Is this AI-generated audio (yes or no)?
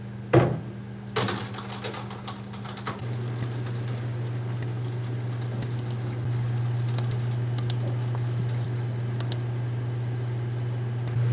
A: no